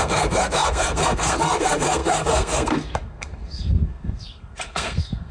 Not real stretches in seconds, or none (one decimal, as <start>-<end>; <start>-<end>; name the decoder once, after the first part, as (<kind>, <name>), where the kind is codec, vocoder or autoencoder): 0.0-5.3 (codec, SNAC)